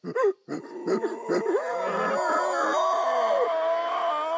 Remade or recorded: recorded